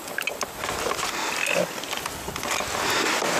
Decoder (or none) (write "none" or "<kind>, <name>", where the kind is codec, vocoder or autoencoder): none